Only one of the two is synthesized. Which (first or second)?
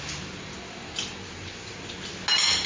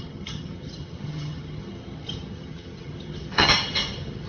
second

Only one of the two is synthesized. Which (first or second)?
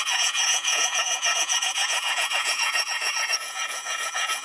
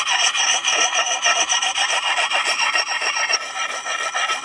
first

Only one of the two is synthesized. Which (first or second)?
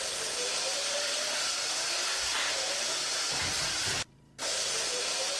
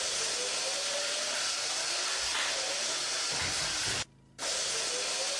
first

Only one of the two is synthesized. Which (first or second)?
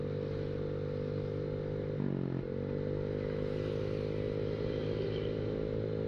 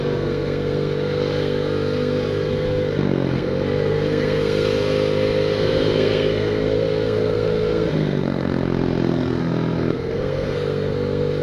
second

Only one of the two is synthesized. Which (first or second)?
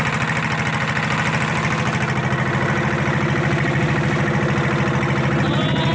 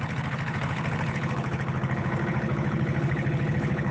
second